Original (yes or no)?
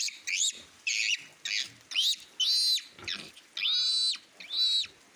yes